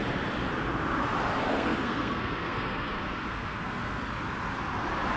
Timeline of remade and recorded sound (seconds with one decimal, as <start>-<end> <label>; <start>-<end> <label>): 0.0-1.5 recorded; 1.5-4.0 remade; 4.0-5.2 recorded